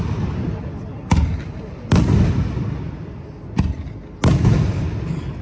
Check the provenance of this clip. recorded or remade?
recorded